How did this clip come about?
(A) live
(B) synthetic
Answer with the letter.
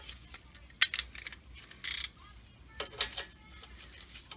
A